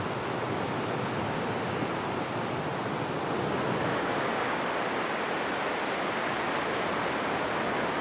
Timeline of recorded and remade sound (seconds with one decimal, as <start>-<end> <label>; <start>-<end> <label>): 0.0-3.9 recorded; 3.9-4.6 remade; 4.6-8.0 recorded